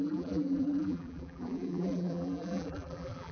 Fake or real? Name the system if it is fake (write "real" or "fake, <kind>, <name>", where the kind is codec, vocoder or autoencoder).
fake, vocoder, BigVGAN v2